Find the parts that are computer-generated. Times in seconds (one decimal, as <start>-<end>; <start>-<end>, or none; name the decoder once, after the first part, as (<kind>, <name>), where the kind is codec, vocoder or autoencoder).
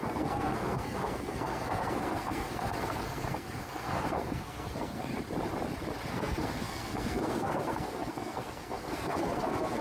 0.0-5.1 (codec, SNAC); 6.1-9.8